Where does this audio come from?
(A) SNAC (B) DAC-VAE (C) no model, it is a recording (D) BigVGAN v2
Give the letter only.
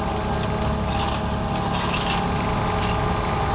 C